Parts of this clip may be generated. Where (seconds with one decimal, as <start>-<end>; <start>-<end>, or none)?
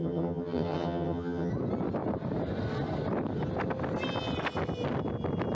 0.0-1.5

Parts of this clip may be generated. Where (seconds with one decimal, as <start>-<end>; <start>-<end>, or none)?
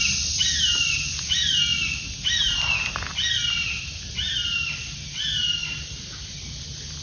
none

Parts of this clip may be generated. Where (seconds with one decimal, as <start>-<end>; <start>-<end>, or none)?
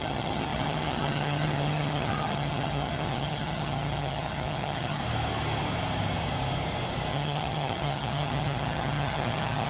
0.0-5.0; 7.1-9.7